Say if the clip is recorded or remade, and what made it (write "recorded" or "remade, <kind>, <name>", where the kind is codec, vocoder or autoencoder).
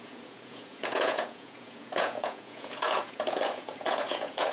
remade, vocoder, Vocos